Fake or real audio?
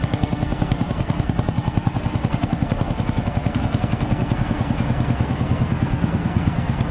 fake